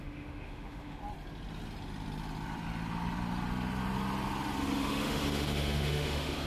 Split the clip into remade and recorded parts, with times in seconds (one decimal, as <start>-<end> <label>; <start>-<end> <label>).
0.0-1.0 remade; 1.0-4.9 recorded; 4.9-6.5 remade